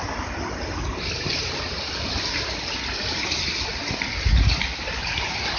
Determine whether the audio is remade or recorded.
recorded